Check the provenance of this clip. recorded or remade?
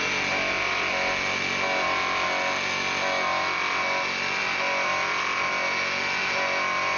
recorded